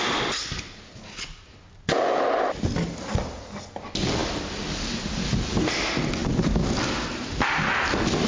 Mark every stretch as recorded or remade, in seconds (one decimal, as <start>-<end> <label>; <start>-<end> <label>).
0.0-8.3 recorded